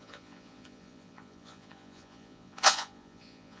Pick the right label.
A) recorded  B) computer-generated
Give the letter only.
B